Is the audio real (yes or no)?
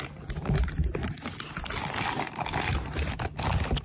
no